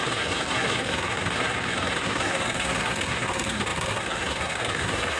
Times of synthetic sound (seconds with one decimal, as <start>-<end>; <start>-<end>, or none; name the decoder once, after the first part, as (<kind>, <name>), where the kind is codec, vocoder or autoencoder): 0.0-5.2 (codec, SNAC)